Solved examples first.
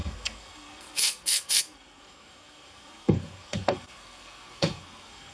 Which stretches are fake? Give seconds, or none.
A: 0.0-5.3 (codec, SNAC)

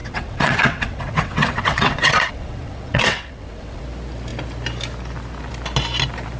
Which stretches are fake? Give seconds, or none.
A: 0.0-3.8 (vocoder, WaveNeXt)